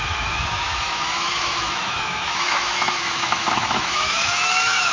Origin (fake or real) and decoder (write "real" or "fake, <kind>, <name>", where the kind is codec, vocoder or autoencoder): fake, autoencoder, DAC-VAE